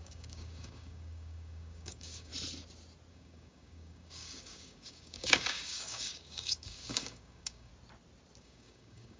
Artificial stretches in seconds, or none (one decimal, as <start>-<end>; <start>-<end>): 0.0-2.3; 3.1-7.7; 8.4-9.2